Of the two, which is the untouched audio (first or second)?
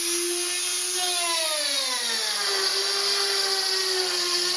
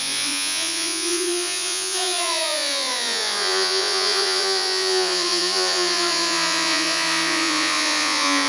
first